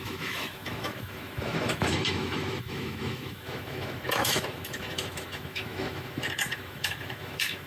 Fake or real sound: fake